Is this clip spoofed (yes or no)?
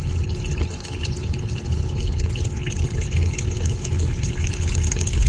yes